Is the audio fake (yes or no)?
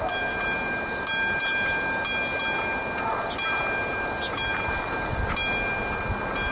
no